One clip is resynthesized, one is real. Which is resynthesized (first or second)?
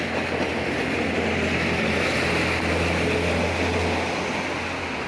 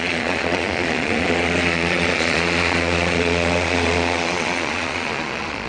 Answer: second